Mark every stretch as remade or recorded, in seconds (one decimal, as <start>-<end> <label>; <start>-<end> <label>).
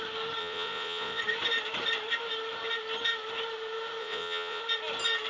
0.0-0.4 recorded; 0.4-1.2 remade; 1.2-4.0 recorded; 4.0-4.6 remade; 4.6-5.3 recorded